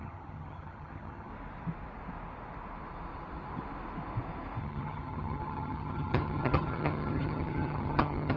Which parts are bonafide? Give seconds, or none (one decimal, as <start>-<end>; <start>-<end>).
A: 1.3-4.6